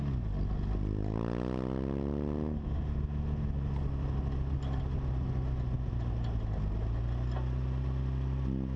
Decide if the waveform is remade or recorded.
recorded